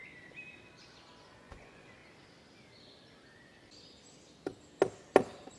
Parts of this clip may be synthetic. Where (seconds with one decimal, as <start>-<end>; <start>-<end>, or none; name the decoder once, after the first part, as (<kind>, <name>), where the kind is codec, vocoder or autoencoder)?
1.2-2.0 (vocoder, Vocos)

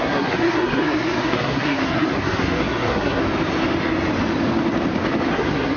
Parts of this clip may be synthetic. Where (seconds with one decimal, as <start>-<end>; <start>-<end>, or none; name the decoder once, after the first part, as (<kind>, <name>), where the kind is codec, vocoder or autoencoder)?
0.0-3.2 (codec, SNAC); 5.3-5.8

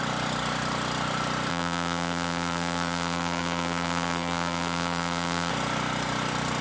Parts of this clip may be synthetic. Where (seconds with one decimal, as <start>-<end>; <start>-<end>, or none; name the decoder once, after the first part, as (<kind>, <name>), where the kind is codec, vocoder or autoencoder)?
1.5-5.5 (vocoder, BigVGAN v2)